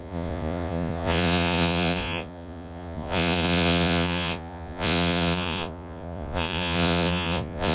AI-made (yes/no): yes